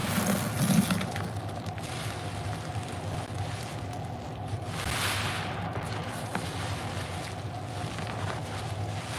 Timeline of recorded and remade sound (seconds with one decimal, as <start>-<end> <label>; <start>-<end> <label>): 0.0-9.2 recorded